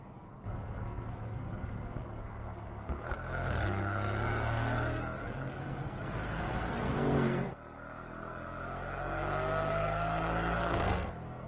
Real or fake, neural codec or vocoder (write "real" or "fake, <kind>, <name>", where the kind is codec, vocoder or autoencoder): fake, codec, SNAC